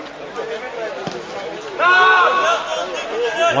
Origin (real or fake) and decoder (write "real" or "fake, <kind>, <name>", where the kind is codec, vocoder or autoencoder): real